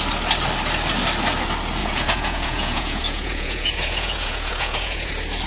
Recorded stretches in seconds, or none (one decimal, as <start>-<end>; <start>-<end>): 0.0-1.8; 5.1-5.5